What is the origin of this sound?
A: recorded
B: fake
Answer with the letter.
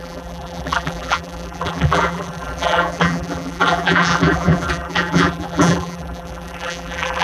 B